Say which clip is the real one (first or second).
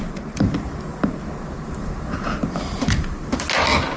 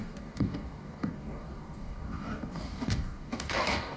first